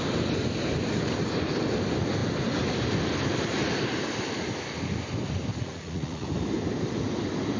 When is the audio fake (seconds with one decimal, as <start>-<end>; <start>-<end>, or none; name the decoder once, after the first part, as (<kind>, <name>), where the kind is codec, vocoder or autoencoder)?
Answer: 5.5-6.3 (vocoder, Vocos)

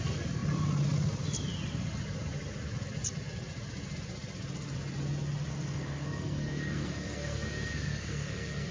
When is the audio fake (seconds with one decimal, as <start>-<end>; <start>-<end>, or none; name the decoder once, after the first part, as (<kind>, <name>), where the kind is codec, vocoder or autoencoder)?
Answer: 5.5-8.7 (codec, SNAC)

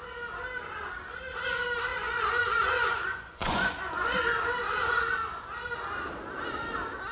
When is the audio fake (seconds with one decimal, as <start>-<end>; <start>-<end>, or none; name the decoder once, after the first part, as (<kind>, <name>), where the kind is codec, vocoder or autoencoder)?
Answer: 1.9-4.3 (vocoder, Vocos)

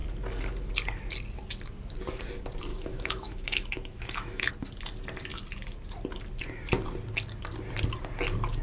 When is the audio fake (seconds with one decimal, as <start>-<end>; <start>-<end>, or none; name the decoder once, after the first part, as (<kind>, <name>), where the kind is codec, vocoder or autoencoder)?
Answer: 2.7-4.5 (autoencoder, DAC-VAE)

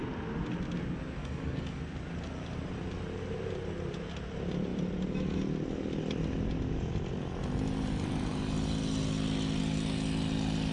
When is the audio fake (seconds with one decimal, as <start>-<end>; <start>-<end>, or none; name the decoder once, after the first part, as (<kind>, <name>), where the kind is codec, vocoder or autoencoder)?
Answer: 1.2-1.8 (codec, DAC)

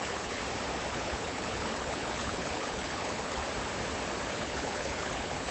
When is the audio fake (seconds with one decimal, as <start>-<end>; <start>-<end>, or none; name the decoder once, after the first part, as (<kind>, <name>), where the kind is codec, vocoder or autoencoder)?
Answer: 0.0-0.4 (codec, HILCodec); 0.9-3.4; 4.3-5.5

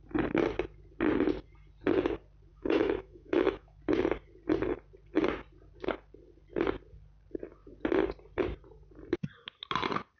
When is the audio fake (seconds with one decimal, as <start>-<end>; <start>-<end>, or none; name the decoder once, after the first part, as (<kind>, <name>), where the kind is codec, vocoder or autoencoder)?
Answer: 2.5-3.8 (autoencoder, DAC-VAE)